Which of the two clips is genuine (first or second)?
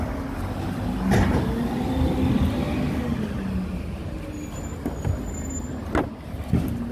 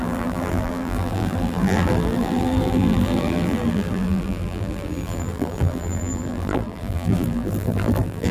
first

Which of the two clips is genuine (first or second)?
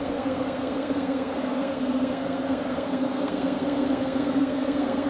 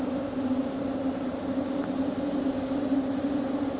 second